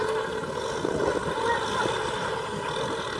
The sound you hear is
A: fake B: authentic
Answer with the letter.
B